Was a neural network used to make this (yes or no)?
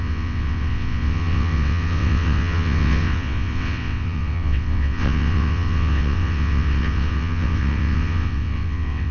yes